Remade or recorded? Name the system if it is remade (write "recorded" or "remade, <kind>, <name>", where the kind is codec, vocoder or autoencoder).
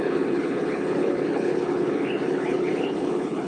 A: remade, codec, HILCodec